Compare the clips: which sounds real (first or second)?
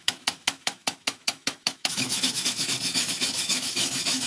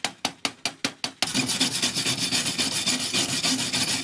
second